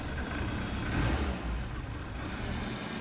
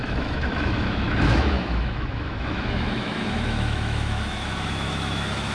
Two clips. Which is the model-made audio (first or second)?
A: second